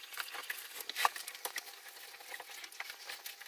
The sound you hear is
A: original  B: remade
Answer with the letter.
A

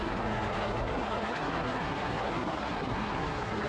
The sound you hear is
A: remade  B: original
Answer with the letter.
A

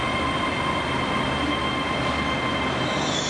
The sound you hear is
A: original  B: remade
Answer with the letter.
A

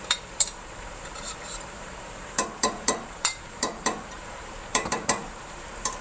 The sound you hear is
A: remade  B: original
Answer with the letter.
A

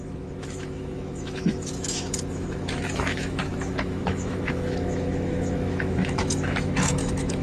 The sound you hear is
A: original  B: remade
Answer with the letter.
B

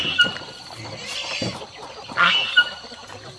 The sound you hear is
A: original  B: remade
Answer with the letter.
A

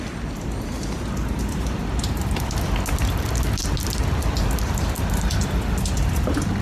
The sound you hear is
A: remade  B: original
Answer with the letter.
B